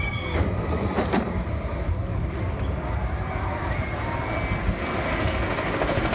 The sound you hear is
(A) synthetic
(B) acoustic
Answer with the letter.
B